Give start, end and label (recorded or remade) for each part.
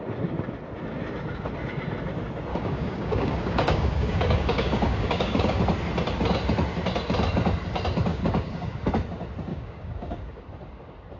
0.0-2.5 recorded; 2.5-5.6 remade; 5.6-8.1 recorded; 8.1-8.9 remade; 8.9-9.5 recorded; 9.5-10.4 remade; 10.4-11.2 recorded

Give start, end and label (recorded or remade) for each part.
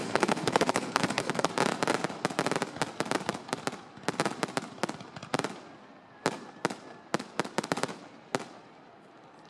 0.0-1.5 remade; 1.5-9.5 recorded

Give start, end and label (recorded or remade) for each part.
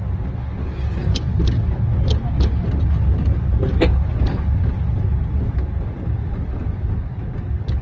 0.0-1.0 recorded; 1.0-2.6 remade; 2.6-3.5 recorded; 3.5-7.1 remade; 7.1-7.8 recorded